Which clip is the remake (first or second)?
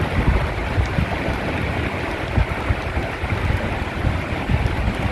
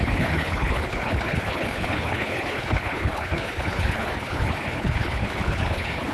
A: second